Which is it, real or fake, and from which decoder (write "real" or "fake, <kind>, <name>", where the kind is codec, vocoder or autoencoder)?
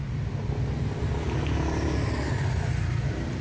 real